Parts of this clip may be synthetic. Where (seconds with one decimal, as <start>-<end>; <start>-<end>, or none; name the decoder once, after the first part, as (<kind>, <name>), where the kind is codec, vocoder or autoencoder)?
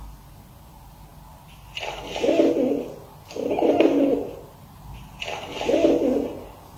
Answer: none